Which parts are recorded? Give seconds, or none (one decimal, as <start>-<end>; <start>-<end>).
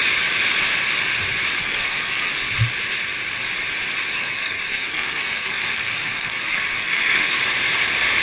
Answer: 0.0-1.6; 2.3-4.1; 7.4-8.2